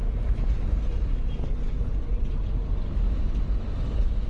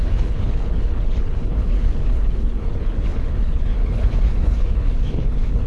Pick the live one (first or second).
first